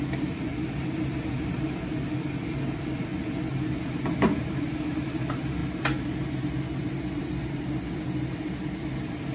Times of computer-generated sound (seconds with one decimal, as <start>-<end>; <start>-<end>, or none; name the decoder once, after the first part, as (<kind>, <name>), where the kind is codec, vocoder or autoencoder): 0.0-1.9 (vocoder, BigVGAN v2); 2.5-3.1; 3.8-5.6; 7.0-9.3